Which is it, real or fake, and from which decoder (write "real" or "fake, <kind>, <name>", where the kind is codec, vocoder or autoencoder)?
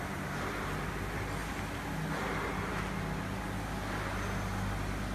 real